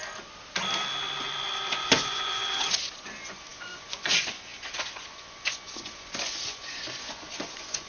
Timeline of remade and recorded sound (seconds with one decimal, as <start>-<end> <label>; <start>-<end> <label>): 0.0-1.7 recorded; 1.7-7.9 remade